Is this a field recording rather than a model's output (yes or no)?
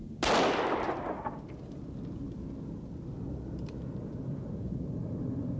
yes